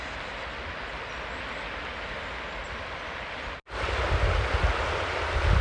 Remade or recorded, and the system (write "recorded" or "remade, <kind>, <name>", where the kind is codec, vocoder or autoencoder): recorded